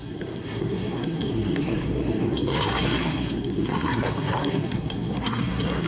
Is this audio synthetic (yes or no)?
yes